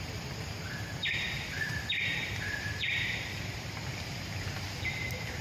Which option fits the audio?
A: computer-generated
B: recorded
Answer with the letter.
A